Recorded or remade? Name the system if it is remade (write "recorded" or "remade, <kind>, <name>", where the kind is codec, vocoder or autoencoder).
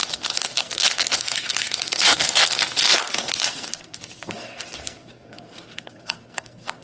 remade, codec, SNAC